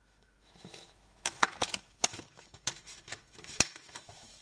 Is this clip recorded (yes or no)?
no